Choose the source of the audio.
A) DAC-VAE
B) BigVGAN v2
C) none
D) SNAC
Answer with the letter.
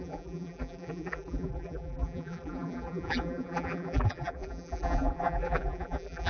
B